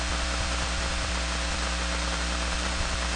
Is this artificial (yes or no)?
yes